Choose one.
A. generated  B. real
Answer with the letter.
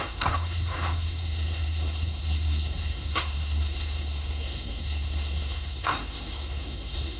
A